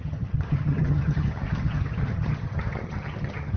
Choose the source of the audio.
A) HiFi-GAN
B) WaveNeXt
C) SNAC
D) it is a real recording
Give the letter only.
A